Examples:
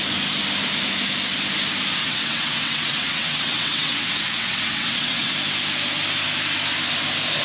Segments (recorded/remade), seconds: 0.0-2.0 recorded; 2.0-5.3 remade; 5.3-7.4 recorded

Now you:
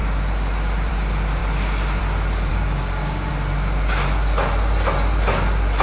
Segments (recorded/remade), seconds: 0.0-2.5 recorded; 2.5-3.3 remade; 3.3-5.8 recorded

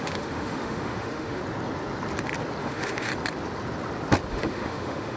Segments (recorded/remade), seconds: 0.0-1.4 remade; 1.4-2.6 recorded; 2.6-3.1 remade; 3.1-4.3 recorded; 4.3-5.2 remade

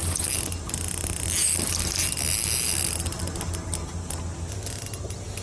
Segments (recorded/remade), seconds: 0.0-5.4 recorded

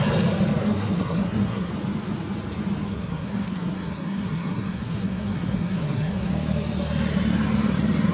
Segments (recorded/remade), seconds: 0.0-0.6 recorded; 0.6-1.7 remade; 1.7-2.9 recorded; 2.9-6.3 remade; 6.3-8.1 recorded

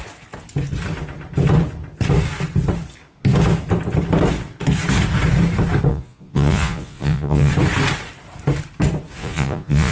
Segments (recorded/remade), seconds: 0.0-5.9 recorded; 5.9-7.5 remade; 7.5-9.2 recorded; 9.2-9.9 remade

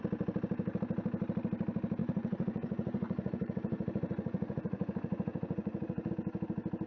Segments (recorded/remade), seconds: 0.0-2.0 recorded; 2.0-6.1 remade; 6.1-6.9 recorded

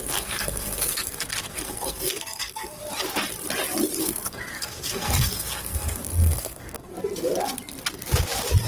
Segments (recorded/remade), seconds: 0.0-2.8 remade; 2.8-4.0 recorded; 4.0-6.9 remade; 6.9-8.7 recorded